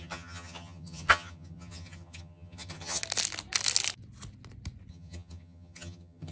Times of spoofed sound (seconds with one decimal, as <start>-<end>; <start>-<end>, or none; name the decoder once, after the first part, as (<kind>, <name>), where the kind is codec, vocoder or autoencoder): 0.0-3.0 (vocoder, HiFi-GAN); 4.9-6.3